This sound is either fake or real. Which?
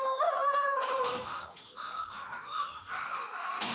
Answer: fake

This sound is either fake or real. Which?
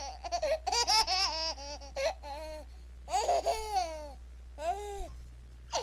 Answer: real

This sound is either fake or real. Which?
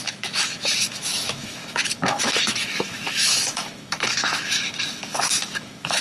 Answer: fake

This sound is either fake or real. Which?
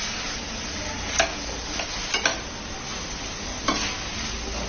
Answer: real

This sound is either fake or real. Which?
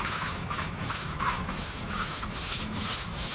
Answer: fake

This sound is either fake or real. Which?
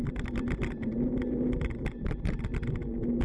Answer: real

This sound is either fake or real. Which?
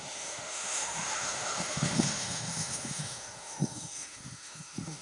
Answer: fake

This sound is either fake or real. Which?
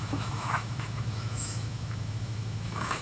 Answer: fake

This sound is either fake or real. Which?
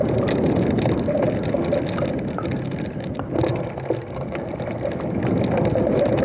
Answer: real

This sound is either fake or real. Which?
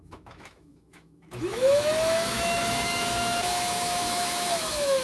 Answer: fake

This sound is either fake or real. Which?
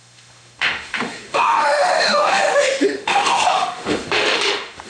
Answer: fake